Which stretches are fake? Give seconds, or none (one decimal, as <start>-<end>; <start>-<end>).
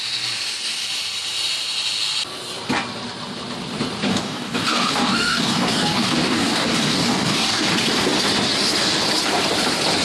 4.1-7.7